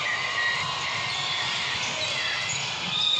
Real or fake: fake